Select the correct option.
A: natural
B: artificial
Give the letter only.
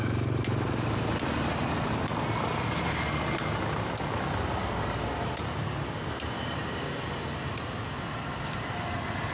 A